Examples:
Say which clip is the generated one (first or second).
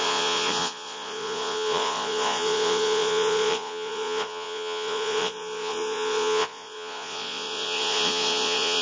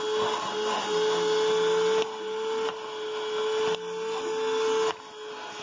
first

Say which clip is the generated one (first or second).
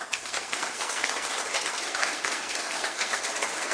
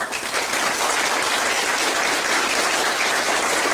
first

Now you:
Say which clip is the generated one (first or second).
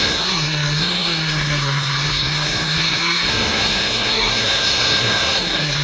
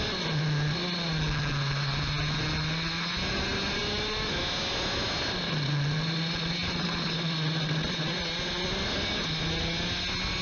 first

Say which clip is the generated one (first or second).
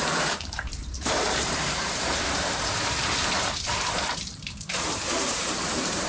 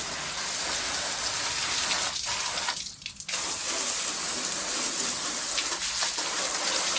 first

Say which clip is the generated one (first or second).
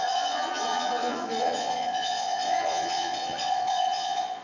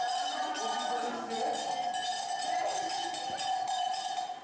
first